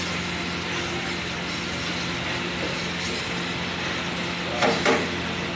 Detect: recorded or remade recorded